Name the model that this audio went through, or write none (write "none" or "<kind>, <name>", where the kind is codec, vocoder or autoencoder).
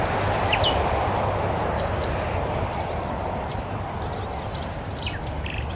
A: none